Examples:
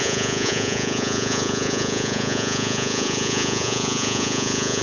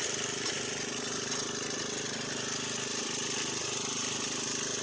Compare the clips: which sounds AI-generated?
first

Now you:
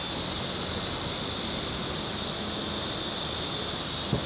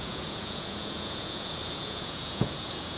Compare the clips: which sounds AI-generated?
second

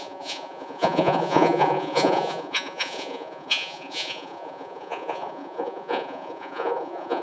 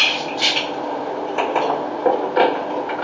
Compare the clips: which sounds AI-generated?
first